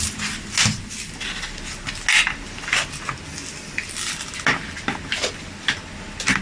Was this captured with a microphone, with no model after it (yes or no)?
yes